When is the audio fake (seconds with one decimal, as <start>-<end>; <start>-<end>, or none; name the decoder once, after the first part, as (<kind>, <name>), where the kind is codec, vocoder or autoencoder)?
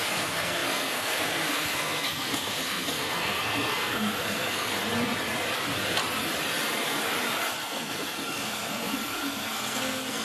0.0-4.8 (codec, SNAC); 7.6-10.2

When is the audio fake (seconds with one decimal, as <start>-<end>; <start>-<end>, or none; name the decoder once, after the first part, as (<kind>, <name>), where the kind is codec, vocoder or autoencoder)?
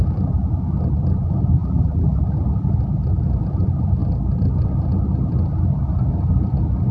1.6-2.2 (vocoder, BigVGAN v2)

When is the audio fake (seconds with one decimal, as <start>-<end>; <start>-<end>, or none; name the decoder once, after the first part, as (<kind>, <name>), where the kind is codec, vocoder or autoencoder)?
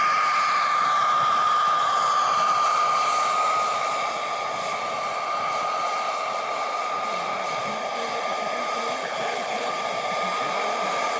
9.0-9.7 (codec, HILCodec)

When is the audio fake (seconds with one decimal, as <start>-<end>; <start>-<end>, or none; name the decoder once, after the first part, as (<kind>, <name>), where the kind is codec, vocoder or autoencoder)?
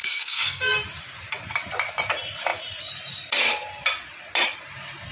0.0-0.7 (codec, SNAC)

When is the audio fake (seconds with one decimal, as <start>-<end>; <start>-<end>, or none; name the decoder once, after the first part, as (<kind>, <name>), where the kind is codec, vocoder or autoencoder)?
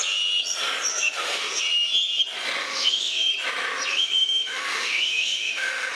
0.9-1.6 (autoencoder, DAC-VAE); 2.6-3.3; 3.9-5.9